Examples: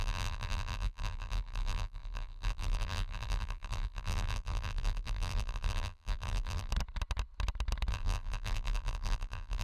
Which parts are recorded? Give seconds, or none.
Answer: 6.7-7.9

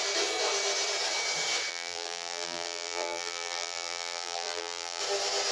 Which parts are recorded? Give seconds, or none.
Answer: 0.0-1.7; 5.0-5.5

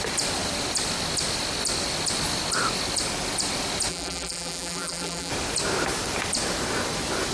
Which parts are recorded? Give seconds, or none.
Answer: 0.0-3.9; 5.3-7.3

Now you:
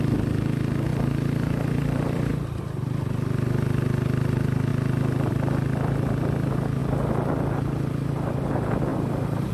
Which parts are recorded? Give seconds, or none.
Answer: 0.0-0.9; 2.3-8.9

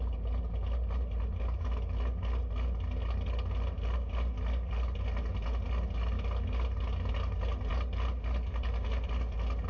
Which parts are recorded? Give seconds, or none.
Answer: 0.0-9.7

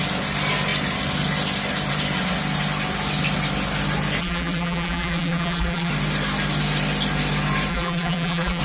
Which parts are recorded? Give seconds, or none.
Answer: 0.0-4.2; 5.9-7.7